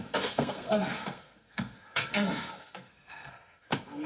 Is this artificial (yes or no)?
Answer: yes